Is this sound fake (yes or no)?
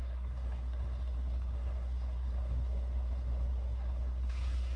yes